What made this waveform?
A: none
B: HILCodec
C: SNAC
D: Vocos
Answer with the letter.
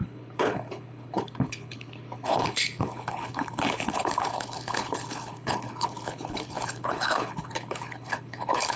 B